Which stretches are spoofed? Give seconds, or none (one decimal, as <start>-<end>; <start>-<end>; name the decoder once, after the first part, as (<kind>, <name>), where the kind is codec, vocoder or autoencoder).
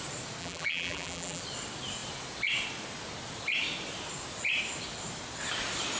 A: 0.4-1.4 (vocoder, BigVGAN v2)